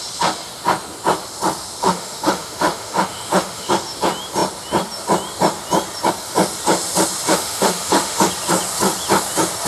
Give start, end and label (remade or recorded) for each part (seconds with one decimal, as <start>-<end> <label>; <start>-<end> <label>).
0.0-1.8 recorded; 1.8-3.7 remade; 3.7-7.3 recorded; 7.3-8.3 remade; 8.3-9.7 recorded